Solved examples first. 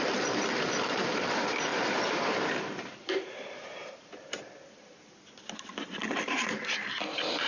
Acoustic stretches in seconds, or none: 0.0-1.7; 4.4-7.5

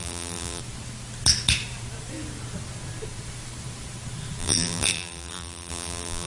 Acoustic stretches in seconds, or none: 0.6-4.4